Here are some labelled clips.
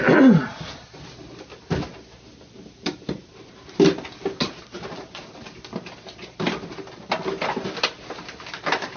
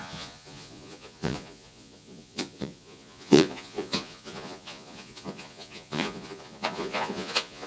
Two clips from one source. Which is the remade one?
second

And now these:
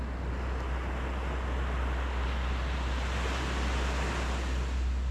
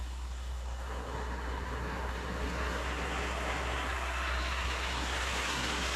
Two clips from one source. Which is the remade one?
second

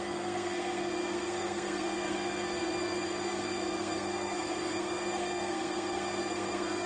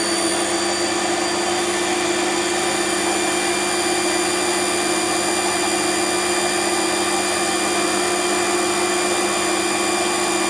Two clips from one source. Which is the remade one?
first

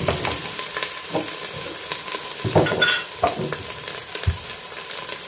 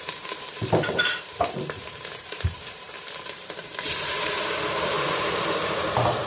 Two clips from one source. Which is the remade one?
second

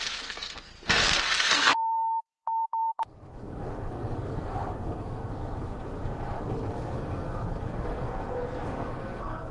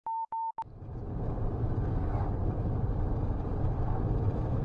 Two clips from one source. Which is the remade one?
first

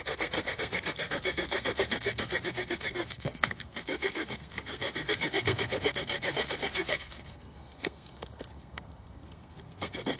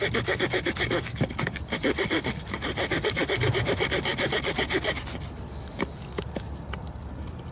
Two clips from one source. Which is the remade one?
first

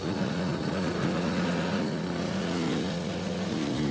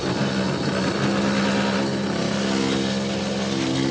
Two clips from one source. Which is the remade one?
first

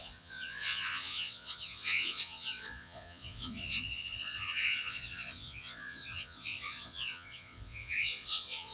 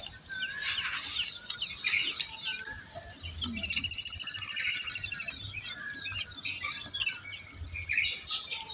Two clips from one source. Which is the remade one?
first